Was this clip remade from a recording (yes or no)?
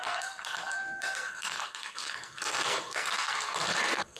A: yes